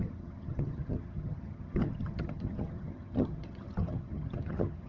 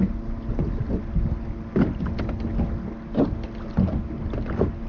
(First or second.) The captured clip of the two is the second